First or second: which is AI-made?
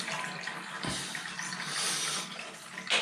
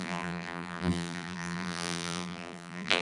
second